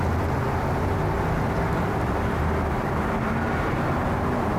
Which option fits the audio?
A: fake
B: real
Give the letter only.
B